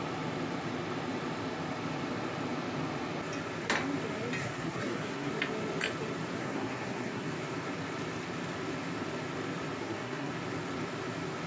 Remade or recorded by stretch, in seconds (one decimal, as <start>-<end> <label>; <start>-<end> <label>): 0.0-4.4 recorded; 4.4-5.3 remade; 5.3-6.4 recorded; 6.4-7.3 remade; 7.3-9.8 recorded; 9.8-10.3 remade; 10.3-11.5 recorded